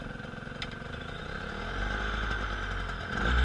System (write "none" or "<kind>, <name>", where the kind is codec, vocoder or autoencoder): none